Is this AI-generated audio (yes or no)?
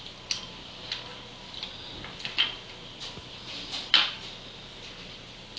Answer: no